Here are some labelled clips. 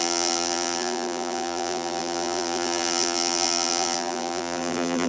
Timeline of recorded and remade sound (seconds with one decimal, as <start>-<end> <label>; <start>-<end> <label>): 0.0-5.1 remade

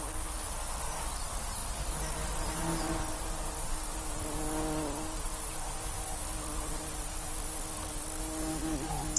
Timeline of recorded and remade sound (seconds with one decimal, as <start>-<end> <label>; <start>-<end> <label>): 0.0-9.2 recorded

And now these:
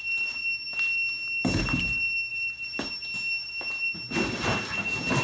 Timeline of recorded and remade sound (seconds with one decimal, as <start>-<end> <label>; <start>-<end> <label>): 0.0-2.3 recorded; 2.3-2.9 remade; 2.9-5.2 recorded